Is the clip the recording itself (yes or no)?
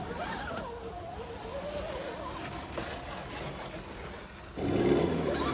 yes